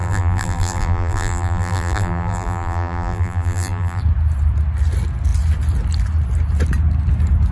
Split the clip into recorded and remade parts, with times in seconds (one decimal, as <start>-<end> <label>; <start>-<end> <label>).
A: 0.0-4.0 remade; 4.0-7.5 recorded